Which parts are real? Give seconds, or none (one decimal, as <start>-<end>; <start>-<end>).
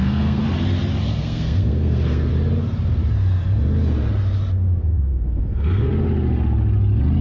0.5-1.1; 2.3-4.8; 5.9-7.2